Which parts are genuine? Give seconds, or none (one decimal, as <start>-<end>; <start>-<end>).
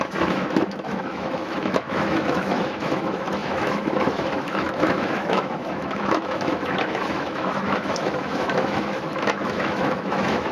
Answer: none